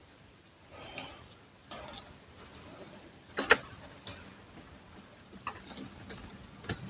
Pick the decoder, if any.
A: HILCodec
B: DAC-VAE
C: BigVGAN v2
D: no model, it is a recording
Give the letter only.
D